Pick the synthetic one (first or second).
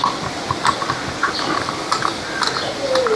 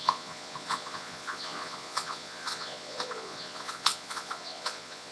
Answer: second